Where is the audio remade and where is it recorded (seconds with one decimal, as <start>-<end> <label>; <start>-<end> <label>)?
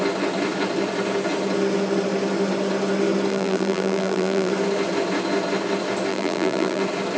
0.0-3.3 recorded; 3.3-4.5 remade; 4.5-6.1 recorded; 6.1-6.8 remade; 6.8-7.2 recorded